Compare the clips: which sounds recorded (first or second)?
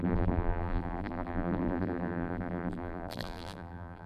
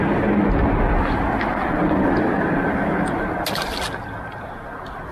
second